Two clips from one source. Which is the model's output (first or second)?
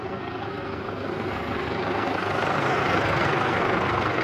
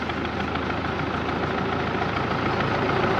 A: first